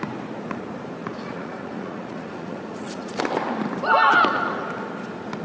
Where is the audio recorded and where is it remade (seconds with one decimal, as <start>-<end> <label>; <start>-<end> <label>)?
0.0-1.0 recorded; 1.0-3.2 remade; 3.2-5.4 recorded